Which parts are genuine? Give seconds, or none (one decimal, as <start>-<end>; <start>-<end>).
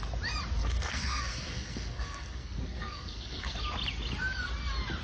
0.0-0.6; 3.6-5.0